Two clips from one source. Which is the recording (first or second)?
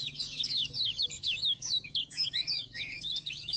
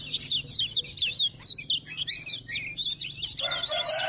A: second